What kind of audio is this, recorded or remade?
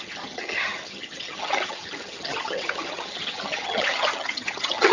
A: remade